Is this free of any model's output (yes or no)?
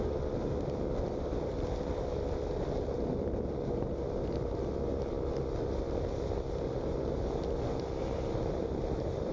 yes